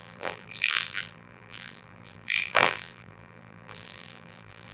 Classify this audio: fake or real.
fake